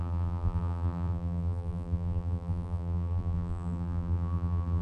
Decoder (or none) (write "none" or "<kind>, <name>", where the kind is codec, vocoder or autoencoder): vocoder, BigVGAN v2